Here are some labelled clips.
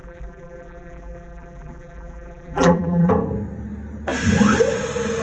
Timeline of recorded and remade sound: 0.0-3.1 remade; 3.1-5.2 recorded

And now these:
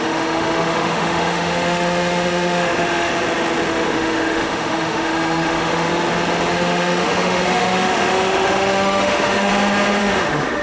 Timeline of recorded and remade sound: 0.0-3.1 remade; 3.1-3.7 recorded; 3.7-5.9 remade; 5.9-6.5 recorded; 6.5-9.5 remade; 9.5-10.0 recorded; 10.0-10.6 remade